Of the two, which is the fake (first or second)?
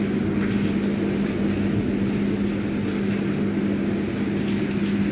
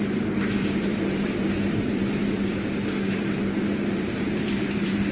second